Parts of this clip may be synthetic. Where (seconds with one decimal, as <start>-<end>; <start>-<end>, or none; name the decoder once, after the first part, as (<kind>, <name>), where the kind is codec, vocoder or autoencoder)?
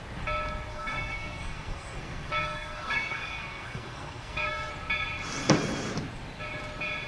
0.7-4.7 (codec, SNAC)